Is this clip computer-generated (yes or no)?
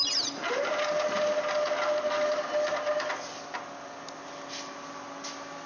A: no